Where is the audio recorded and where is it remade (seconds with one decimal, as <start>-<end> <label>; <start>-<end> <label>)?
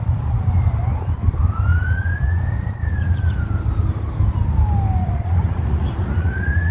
0.0-1.7 recorded; 1.7-3.4 remade; 3.4-5.0 recorded; 5.0-6.7 remade